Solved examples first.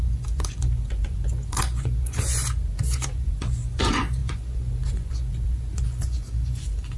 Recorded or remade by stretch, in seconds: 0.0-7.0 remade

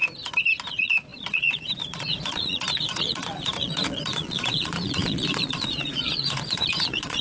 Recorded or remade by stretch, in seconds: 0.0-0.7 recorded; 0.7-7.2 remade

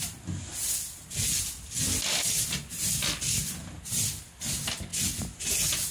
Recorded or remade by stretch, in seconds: 0.0-5.9 recorded